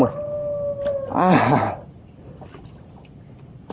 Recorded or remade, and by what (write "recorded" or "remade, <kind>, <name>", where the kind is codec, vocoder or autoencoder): recorded